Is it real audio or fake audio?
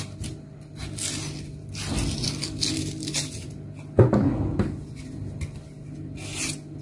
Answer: real